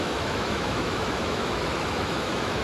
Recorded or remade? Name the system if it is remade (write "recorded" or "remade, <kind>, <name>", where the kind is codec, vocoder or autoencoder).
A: remade, autoencoder, DAC-VAE